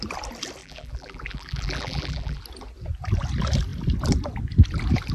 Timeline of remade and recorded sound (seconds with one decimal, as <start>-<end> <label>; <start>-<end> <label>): 0.0-0.6 recorded; 0.6-2.4 remade; 2.4-5.1 recorded